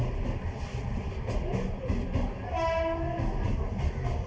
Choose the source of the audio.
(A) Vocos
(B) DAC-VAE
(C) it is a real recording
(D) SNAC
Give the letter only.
C